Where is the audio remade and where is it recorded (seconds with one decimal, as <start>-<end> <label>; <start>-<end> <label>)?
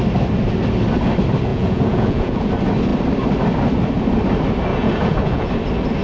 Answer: 0.0-1.5 recorded; 1.5-2.5 remade; 2.5-4.7 recorded; 4.7-5.5 remade; 5.5-6.0 recorded